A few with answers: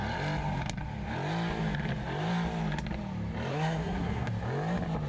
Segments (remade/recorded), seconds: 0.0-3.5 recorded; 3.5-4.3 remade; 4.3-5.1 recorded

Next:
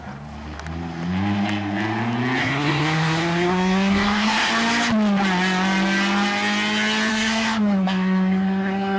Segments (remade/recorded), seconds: 0.0-2.4 recorded; 2.4-4.5 remade; 4.5-7.1 recorded; 7.1-9.0 remade

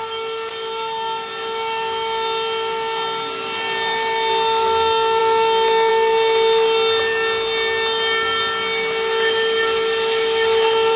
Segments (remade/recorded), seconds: 0.0-11.0 recorded

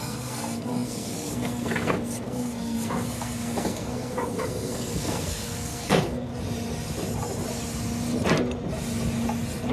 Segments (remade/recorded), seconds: 0.0-6.3 remade; 6.3-9.7 recorded

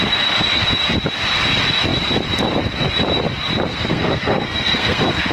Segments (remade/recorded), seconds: 0.0-3.7 recorded; 3.7-5.3 remade